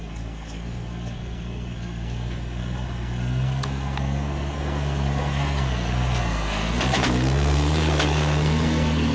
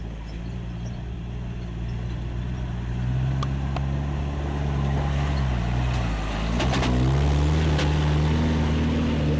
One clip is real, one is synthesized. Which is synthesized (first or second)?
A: first